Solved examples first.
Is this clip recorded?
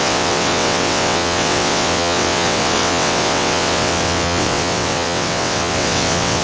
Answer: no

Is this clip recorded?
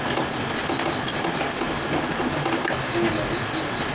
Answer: yes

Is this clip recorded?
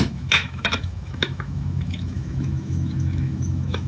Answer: no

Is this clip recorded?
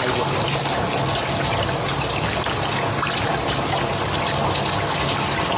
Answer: yes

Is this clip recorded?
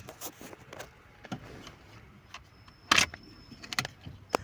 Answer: yes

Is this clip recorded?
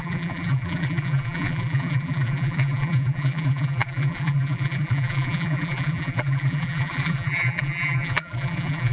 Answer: no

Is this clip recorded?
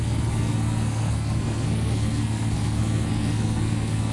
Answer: no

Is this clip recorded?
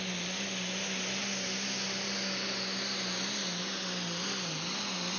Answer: yes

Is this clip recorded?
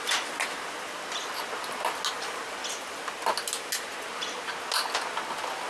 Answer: yes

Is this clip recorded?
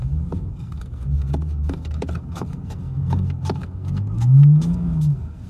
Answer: no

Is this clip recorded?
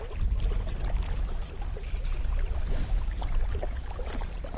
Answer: yes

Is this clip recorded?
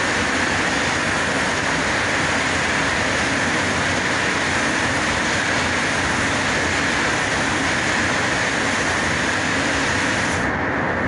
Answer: yes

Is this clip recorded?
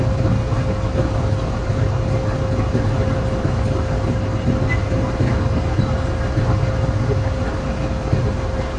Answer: yes